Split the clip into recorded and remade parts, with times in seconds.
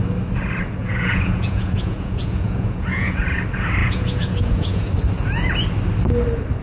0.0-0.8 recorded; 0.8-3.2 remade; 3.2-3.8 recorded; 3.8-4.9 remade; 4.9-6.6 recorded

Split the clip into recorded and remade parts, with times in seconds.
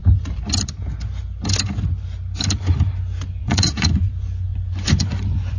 0.0-3.4 recorded; 3.4-5.6 remade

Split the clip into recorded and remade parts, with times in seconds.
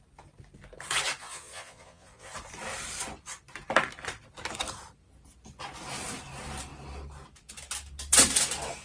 0.0-1.2 recorded; 1.2-2.3 remade; 2.3-8.8 recorded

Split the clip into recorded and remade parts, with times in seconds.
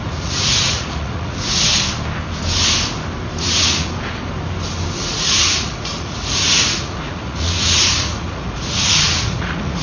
0.0-1.7 remade; 1.7-3.4 recorded; 3.4-3.9 remade; 3.9-5.2 recorded; 5.2-9.8 remade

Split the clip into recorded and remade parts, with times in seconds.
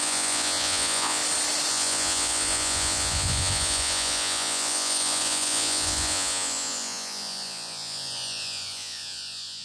0.0-1.2 remade; 1.2-1.7 recorded; 1.7-9.6 remade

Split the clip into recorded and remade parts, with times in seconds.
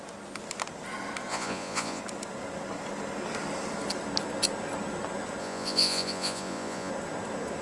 0.0-1.3 recorded; 1.3-2.0 remade; 2.0-5.4 recorded; 5.4-6.9 remade; 6.9-7.6 recorded